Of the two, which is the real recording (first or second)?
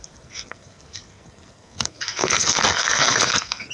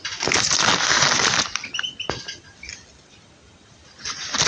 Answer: second